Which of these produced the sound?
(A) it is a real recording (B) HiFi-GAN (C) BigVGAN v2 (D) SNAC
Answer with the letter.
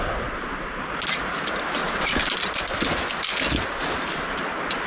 A